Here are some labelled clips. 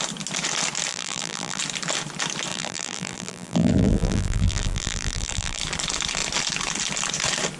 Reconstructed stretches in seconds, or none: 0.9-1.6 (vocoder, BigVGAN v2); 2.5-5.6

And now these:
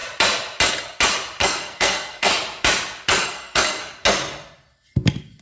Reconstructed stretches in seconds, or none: 1.4-2.3 (codec, SNAC); 3.2-3.8

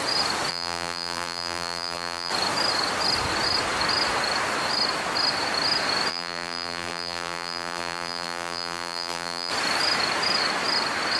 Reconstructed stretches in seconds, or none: 0.5-2.3 (vocoder, BigVGAN v2); 6.1-9.5

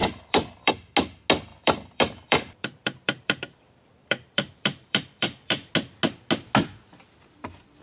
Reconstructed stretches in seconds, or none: 0.0-0.7 (vocoder, BigVGAN v2); 1.5-5.7

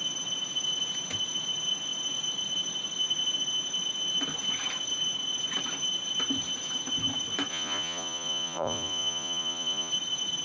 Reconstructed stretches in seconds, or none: 7.5-9.9 (vocoder, Vocos)